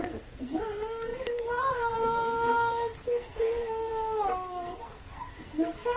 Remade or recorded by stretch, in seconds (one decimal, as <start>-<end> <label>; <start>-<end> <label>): 0.0-6.0 remade